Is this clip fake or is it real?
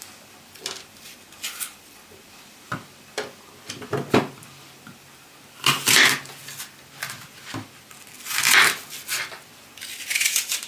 real